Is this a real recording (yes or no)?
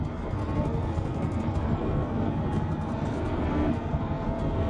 no